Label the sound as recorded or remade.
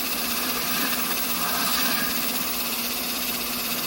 remade